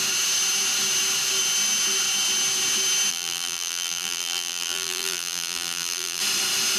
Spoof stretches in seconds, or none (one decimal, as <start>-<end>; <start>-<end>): 3.1-6.2